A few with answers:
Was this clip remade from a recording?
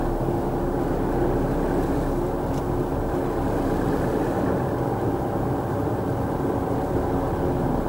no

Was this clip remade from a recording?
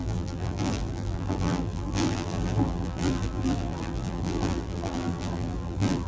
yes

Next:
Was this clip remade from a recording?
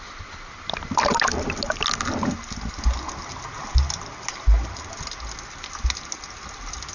no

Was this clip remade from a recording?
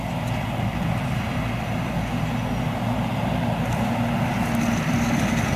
no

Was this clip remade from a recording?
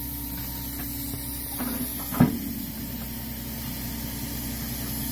no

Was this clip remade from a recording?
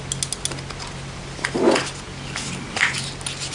no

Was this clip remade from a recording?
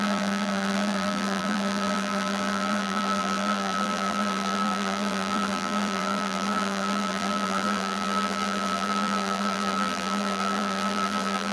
yes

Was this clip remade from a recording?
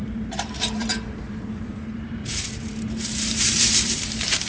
yes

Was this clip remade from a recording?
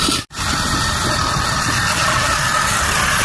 no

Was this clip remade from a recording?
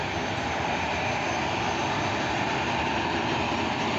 no